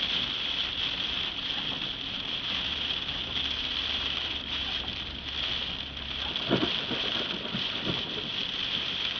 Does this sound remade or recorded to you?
remade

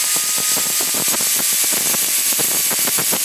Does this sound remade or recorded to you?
recorded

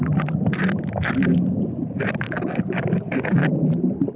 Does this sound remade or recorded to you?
recorded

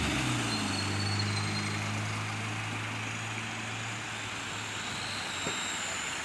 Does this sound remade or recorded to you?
recorded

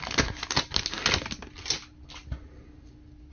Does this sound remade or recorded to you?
recorded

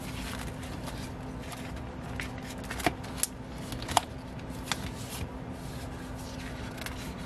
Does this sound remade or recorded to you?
recorded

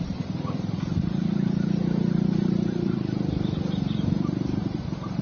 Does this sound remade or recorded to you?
remade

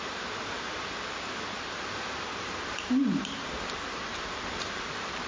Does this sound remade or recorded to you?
remade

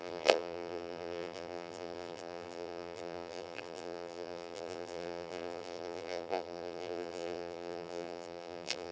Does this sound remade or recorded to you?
remade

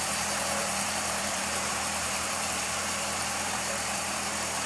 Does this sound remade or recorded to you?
remade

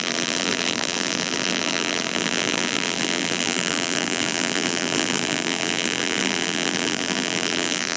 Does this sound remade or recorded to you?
remade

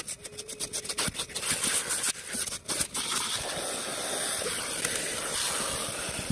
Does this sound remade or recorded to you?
recorded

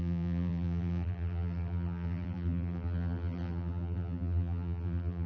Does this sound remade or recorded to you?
remade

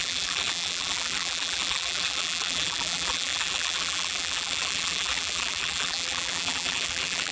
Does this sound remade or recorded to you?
remade